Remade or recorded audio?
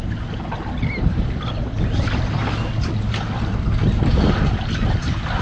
recorded